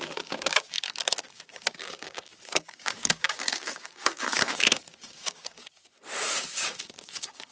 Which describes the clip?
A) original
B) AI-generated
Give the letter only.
B